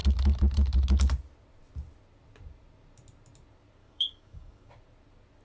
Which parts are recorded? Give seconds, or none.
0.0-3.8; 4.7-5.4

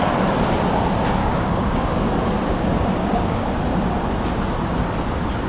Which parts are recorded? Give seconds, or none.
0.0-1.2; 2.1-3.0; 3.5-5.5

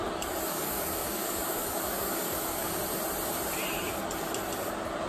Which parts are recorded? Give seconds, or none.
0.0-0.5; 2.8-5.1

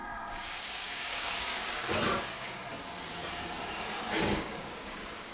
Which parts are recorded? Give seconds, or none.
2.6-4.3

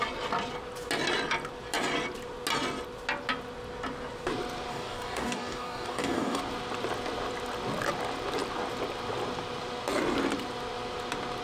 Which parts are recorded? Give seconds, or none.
0.0-4.7; 6.4-11.4

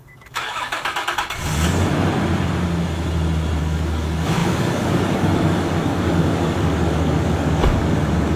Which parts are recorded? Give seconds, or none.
1.4-3.6